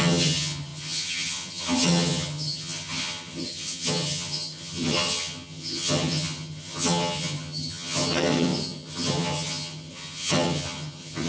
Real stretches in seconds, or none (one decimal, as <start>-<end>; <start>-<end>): none